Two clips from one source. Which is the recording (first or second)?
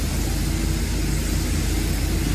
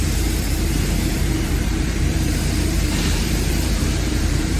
first